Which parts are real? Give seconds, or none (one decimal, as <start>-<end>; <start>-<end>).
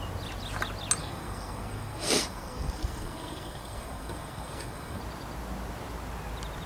0.0-1.0; 5.0-6.7